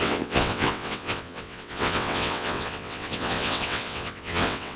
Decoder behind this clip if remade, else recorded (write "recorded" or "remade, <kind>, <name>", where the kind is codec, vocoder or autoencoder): remade, vocoder, WaveNeXt